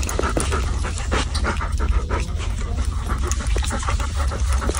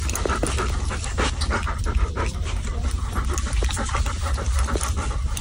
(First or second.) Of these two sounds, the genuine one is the first